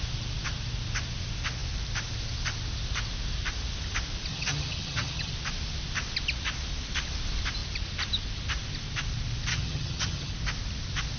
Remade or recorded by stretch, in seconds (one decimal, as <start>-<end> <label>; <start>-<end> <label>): 0.0-4.3 recorded; 4.3-5.3 remade; 5.3-9.5 recorded; 9.5-10.3 remade; 10.3-11.2 recorded